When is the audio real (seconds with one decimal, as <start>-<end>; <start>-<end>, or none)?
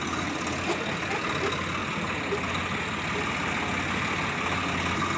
0.0-5.2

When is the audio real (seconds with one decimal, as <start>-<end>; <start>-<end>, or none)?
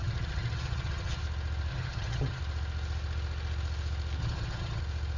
1.2-1.7; 2.4-4.2; 4.8-5.2